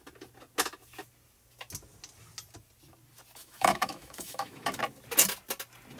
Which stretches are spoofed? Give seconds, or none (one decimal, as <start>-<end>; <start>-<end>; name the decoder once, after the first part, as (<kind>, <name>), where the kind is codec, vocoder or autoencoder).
3.4-4.8 (autoencoder, DAC-VAE)